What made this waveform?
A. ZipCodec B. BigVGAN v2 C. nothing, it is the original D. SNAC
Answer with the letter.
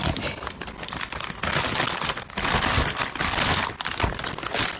C